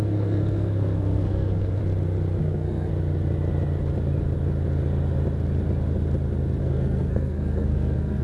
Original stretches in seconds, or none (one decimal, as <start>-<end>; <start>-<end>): 1.8-2.4; 2.9-6.6